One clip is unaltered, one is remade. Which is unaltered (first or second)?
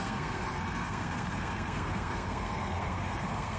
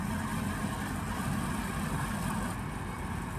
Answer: second